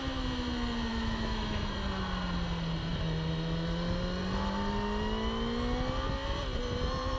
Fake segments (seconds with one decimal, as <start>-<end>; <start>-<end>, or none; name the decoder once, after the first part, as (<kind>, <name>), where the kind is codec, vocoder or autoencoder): 0.9-1.7 (autoencoder, DAC-VAE)